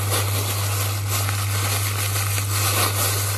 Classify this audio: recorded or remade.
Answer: recorded